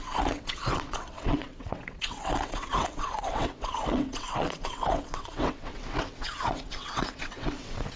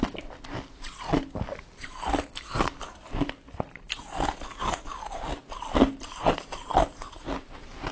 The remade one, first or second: first